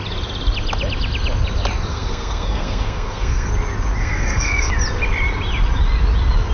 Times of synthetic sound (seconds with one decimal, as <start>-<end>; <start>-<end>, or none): 1.9-3.5; 4.0-4.7